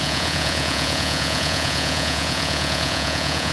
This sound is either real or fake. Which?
fake